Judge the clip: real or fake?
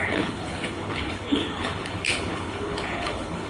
fake